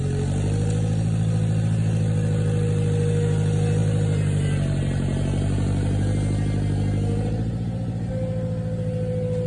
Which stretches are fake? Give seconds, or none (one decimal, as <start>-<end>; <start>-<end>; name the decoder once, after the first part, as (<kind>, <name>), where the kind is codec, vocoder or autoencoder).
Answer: none